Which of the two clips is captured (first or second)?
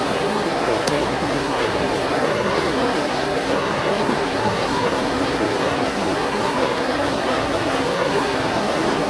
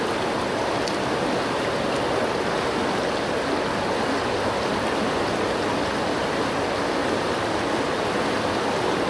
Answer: second